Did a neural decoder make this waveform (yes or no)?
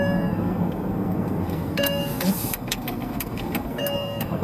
yes